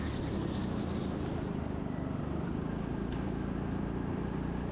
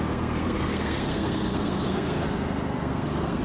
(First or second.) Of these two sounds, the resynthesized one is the second